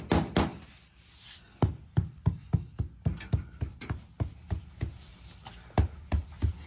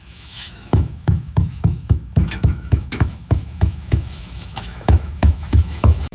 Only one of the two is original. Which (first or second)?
first